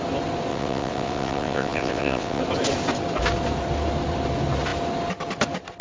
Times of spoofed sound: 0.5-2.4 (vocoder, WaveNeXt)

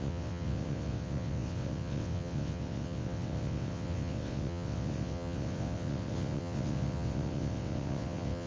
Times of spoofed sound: 0.0-8.5 (vocoder, WaveNeXt)

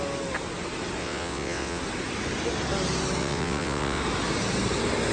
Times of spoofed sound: 1.0-1.8 (vocoder, WaveNeXt); 3.2-4.0

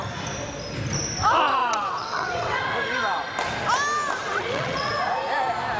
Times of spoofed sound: 1.6-2.6 (vocoder, WaveNeXt); 4.2-4.9

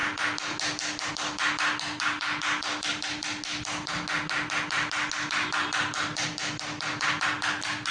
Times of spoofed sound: none